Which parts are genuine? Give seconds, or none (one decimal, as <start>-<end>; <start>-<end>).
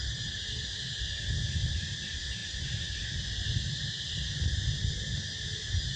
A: 0.0-6.0